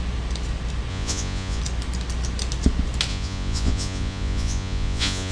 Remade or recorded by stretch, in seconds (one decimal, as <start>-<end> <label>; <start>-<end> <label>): 0.0-0.9 recorded; 0.9-1.6 remade; 1.6-3.1 recorded; 3.1-5.3 remade

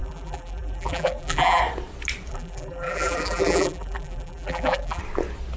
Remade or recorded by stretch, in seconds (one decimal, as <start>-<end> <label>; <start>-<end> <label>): 0.0-1.6 remade; 1.6-2.3 recorded; 2.3-5.0 remade; 5.0-5.6 recorded

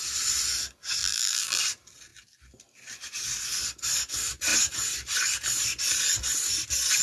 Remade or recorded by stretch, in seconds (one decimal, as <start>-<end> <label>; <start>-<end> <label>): 0.0-1.0 recorded; 1.0-1.6 remade; 1.6-7.0 recorded

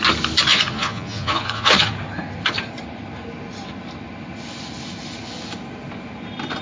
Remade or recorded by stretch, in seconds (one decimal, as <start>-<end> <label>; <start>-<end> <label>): 0.0-0.5 recorded; 0.5-1.9 remade; 1.9-6.6 recorded

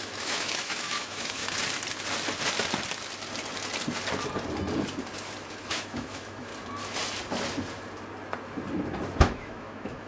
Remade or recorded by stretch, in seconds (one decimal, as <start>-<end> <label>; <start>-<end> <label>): 0.0-1.4 remade; 1.4-5.7 recorded; 5.7-6.5 remade; 6.5-9.2 recorded; 9.2-10.1 remade

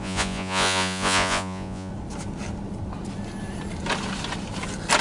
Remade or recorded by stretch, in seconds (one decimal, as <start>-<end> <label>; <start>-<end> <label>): 0.0-1.9 remade; 1.9-5.0 recorded

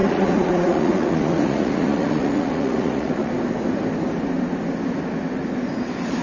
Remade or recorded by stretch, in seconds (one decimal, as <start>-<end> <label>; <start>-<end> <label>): 0.0-3.3 remade; 3.3-6.2 recorded